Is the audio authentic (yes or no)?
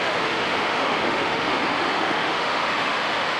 no